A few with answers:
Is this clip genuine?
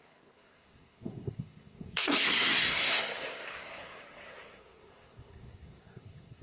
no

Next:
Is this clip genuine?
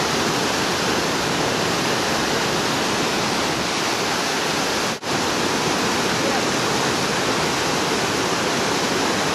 yes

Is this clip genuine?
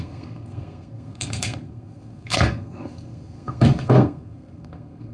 no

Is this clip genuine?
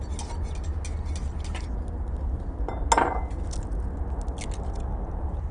yes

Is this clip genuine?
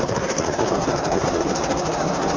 no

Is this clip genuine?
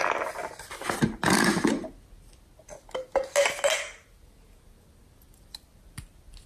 yes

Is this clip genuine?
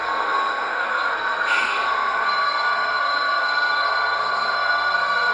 no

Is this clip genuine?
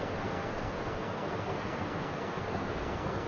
no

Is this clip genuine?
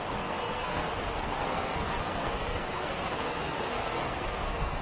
no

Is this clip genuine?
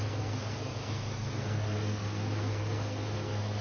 no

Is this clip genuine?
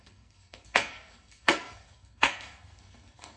no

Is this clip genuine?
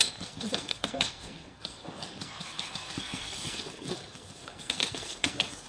no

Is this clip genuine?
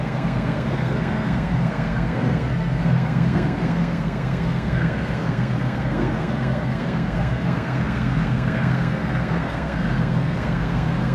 no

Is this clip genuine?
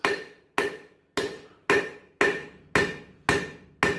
yes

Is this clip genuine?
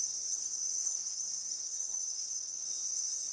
no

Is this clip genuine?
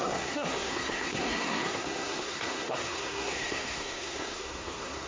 no